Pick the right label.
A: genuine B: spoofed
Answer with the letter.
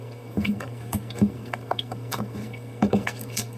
B